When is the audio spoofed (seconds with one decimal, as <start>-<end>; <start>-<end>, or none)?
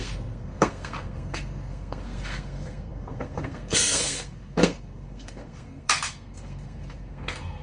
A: 0.0-7.6